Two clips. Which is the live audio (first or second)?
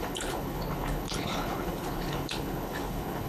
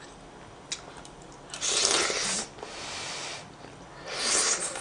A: second